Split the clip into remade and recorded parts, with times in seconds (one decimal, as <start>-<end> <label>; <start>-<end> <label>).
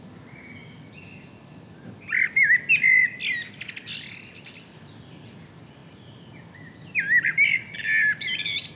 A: 0.0-8.8 recorded